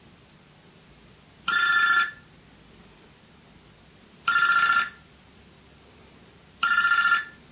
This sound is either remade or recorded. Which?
recorded